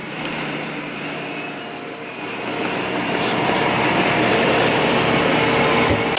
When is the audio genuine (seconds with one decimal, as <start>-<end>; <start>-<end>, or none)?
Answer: 1.2-2.6; 4.7-6.2